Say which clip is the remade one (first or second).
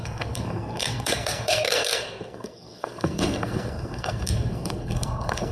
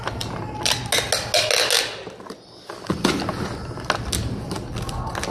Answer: first